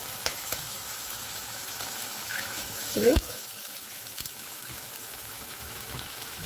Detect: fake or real fake